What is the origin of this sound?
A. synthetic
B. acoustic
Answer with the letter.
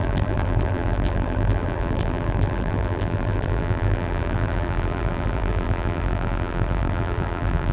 A